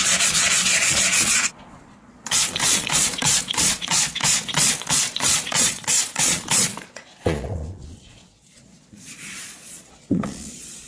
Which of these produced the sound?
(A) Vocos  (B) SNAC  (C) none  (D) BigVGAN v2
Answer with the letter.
A